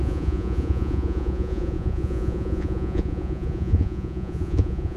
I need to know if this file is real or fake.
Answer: fake